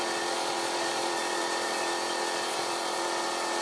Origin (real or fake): fake